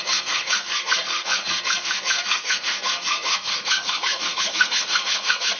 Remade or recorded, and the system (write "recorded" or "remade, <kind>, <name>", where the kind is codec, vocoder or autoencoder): remade, codec, SNAC